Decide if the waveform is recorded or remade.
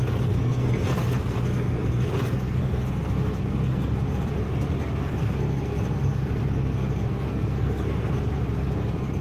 remade